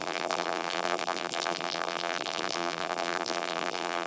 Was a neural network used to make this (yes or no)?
yes